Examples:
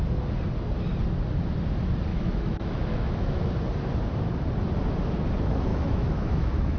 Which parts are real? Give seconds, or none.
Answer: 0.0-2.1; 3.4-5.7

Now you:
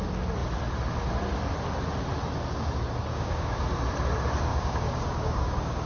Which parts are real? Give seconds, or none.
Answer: 0.0-3.1; 3.6-4.5

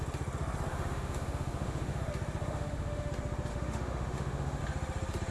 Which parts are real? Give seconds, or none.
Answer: 0.0-0.7; 2.0-2.4; 3.1-3.5; 4.6-5.3

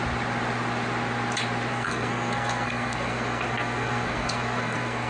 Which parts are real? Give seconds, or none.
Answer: 0.0-1.7